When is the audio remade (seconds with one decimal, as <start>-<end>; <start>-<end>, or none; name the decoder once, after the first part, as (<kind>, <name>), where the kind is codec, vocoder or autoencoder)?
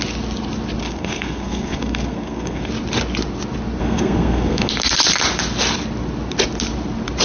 0.8-2.7 (codec, SNAC); 3.8-4.7